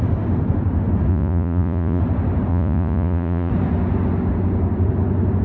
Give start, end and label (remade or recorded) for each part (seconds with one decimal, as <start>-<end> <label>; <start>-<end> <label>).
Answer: 0.0-1.1 recorded; 1.1-2.0 remade; 2.0-2.5 recorded; 2.5-3.5 remade; 3.5-5.4 recorded